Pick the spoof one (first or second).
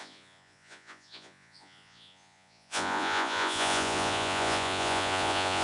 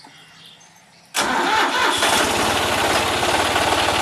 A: first